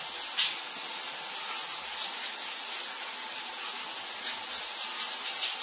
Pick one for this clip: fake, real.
real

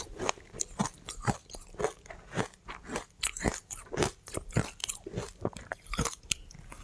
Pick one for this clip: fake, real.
real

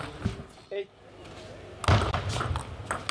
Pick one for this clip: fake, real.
real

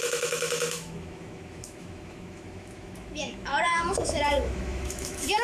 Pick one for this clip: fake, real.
fake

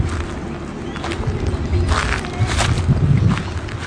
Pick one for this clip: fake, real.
real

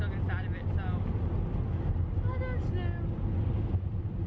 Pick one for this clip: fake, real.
real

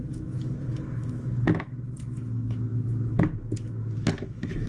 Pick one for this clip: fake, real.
fake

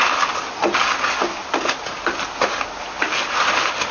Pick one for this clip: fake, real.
real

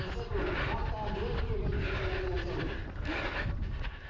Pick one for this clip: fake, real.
real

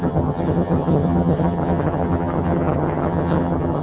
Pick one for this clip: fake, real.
fake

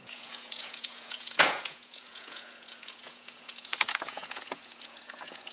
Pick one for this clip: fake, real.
fake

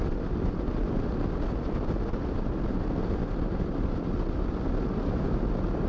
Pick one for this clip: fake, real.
real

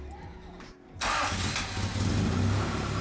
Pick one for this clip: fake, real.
real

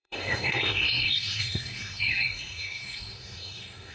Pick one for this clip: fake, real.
fake